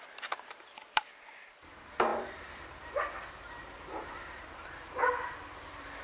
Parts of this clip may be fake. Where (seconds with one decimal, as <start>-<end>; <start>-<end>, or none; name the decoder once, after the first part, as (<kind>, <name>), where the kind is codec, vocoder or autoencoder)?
none